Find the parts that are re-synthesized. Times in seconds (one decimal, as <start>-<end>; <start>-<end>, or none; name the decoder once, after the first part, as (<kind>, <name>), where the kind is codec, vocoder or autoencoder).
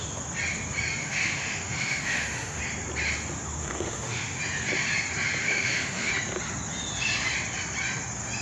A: 1.0-2.6 (autoencoder, DAC-VAE); 3.6-4.4; 5.4-6.1